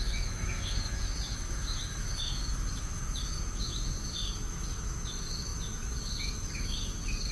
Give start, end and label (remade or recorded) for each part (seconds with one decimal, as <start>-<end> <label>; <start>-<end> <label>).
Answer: 0.0-7.3 remade